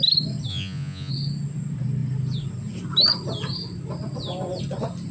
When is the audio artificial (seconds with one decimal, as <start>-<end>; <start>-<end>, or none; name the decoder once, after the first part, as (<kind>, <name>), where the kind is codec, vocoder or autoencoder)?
0.5-1.1 (vocoder, Vocos)